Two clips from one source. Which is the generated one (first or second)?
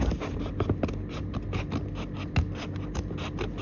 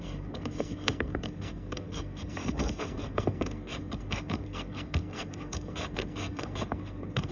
second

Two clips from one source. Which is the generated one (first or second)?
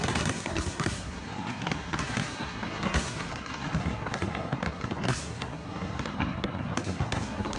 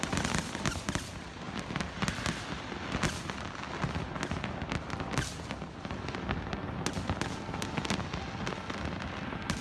first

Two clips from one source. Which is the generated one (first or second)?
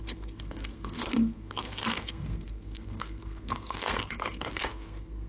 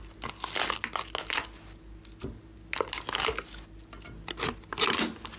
first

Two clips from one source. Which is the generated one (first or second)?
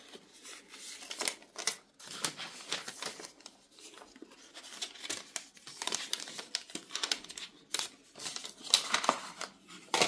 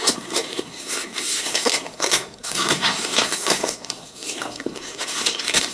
second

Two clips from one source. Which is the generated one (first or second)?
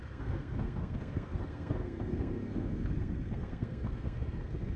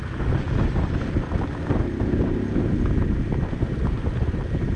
first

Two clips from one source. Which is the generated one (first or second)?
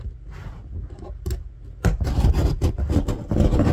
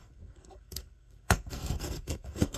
second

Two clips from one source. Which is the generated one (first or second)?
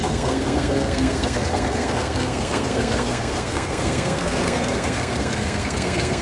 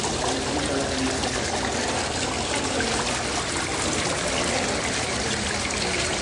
first